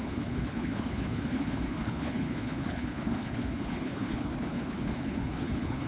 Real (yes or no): no